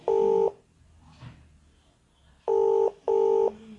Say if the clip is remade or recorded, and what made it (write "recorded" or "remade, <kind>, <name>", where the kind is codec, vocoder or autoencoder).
recorded